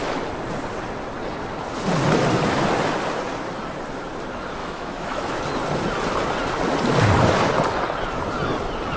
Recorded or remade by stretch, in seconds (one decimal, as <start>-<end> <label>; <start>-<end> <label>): 0.0-4.6 recorded; 4.6-5.4 remade; 5.4-9.0 recorded